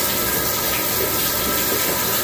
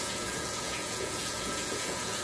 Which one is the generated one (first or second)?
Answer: second